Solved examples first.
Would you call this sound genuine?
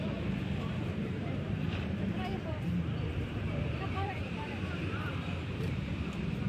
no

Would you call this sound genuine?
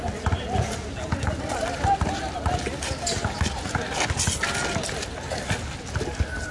yes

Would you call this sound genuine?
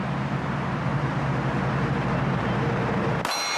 yes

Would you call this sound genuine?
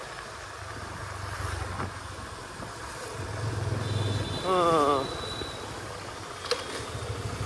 yes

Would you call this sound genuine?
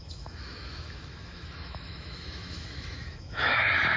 no